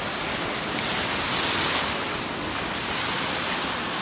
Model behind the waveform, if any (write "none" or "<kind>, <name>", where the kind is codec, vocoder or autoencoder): none